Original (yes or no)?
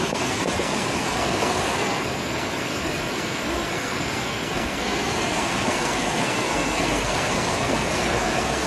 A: no